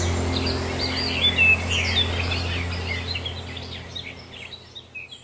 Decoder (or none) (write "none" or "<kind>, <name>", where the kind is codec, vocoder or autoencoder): none